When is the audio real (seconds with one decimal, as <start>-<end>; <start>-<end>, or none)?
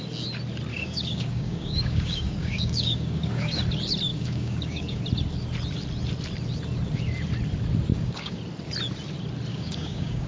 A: 0.0-0.7; 3.6-4.1; 5.0-7.9; 8.4-9.5